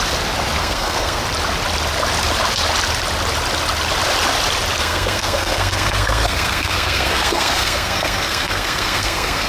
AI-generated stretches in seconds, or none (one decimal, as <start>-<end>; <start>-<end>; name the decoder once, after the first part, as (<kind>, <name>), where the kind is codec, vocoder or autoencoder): 0.6-1.2 (codec, SNAC); 4.8-9.5